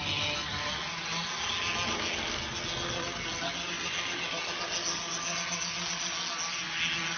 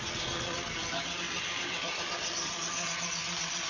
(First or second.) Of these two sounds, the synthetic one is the second